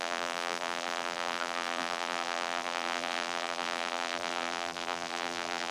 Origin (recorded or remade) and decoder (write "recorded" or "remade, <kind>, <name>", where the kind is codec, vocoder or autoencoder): remade, vocoder, BigVGAN v2